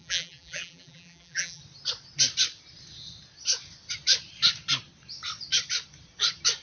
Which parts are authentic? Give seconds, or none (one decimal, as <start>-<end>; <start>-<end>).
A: 1.6-6.6